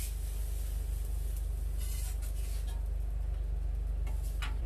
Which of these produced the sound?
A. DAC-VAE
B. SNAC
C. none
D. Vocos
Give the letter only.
C